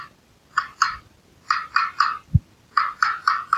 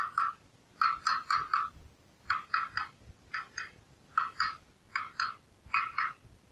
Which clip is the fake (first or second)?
first